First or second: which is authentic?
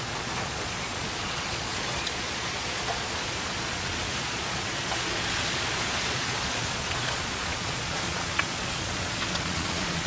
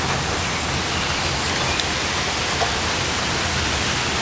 second